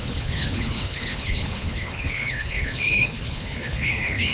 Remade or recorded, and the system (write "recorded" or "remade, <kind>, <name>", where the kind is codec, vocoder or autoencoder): remade, codec, HILCodec